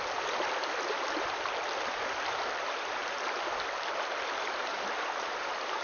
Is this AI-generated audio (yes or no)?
no